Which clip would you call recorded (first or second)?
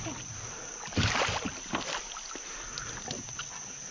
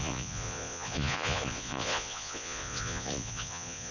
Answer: first